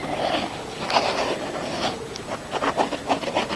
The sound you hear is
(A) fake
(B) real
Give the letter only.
B